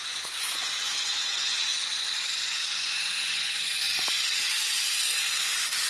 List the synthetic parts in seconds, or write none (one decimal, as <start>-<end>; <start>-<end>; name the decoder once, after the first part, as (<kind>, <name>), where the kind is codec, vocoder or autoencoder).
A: 0.0-3.8 (vocoder, Vocos)